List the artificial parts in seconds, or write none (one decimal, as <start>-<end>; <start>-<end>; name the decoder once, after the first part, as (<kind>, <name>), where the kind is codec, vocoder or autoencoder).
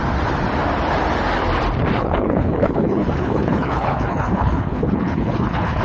1.9-5.8 (codec, HILCodec)